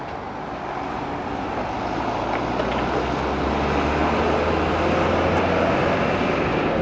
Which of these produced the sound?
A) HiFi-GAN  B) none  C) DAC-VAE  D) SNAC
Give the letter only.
B